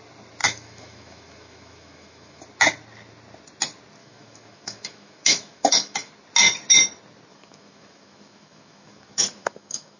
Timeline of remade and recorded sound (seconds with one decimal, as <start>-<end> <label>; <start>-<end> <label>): 0.0-0.4 recorded; 0.4-2.4 remade; 2.4-4.0 recorded; 4.0-6.1 remade; 6.1-7.3 recorded; 7.3-10.0 remade